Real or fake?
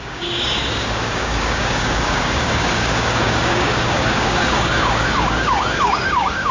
fake